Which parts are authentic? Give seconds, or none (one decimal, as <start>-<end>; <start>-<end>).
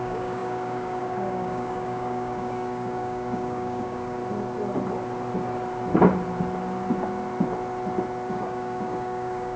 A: 4.2-8.3